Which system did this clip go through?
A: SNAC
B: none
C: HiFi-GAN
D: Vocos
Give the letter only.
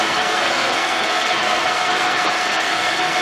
A